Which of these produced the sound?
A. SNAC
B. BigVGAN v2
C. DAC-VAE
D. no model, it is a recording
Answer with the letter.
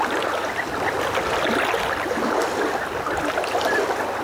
D